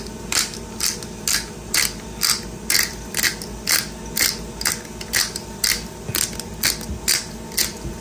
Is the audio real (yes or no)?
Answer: yes